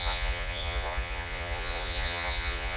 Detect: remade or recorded remade